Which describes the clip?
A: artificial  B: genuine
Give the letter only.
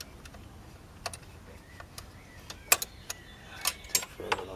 B